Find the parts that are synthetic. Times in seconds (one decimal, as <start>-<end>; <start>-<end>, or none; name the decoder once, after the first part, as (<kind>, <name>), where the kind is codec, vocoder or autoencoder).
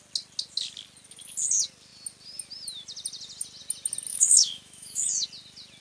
4.1-5.1 (autoencoder, DAC-VAE)